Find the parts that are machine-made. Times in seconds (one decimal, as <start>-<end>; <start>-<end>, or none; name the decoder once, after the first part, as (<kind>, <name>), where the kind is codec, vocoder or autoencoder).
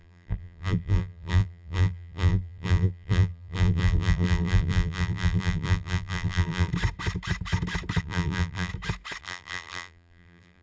0.0-6.7 (vocoder, BigVGAN v2); 8.0-8.7; 9.2-10.6